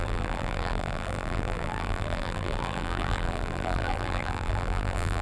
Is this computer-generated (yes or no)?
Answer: yes